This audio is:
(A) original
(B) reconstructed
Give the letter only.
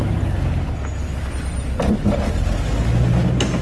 A